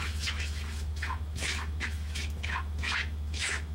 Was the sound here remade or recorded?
remade